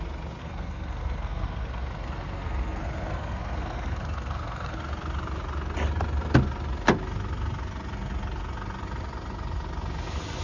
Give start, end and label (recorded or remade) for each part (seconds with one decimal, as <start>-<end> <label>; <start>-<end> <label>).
0.0-0.4 recorded; 0.4-4.8 remade; 4.8-10.4 recorded